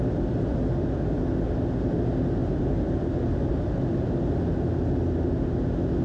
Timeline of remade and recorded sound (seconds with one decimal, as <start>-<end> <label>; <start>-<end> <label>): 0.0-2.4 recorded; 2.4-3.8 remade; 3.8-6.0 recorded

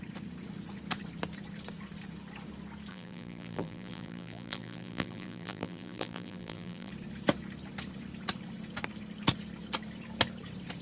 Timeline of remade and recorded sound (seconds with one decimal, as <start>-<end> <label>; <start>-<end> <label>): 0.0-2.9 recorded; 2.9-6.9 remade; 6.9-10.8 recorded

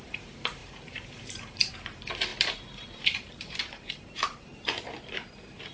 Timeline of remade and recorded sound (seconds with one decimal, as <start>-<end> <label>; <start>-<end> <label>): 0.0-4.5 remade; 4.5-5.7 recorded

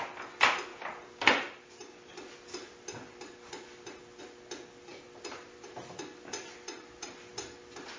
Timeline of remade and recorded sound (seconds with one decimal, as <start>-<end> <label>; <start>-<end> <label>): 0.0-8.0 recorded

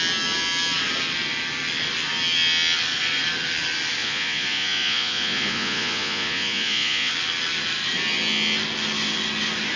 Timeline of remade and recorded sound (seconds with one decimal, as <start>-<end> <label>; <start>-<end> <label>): 0.0-4.0 recorded; 4.0-7.1 remade; 7.1-9.8 recorded

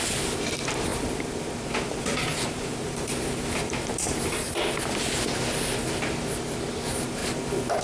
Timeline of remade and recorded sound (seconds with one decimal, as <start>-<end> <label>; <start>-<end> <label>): 0.0-2.3 recorded; 2.3-4.2 remade; 4.2-7.8 recorded

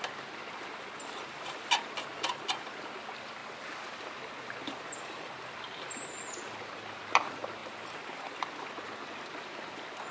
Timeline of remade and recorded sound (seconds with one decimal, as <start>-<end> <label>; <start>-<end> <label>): 0.0-10.1 recorded

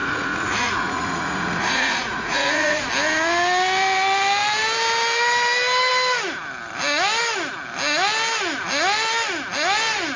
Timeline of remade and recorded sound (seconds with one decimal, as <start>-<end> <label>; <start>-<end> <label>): 0.0-2.9 remade; 2.9-10.2 recorded